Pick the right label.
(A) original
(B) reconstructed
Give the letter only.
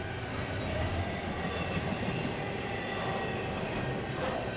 A